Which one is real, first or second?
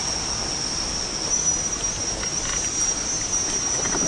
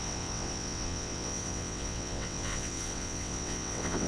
first